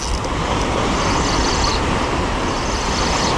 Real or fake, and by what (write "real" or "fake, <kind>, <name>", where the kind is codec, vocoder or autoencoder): real